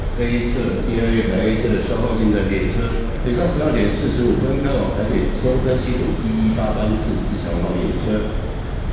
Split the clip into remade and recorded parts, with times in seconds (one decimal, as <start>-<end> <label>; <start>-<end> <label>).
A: 0.0-2.9 recorded; 2.9-3.4 remade; 3.4-8.9 recorded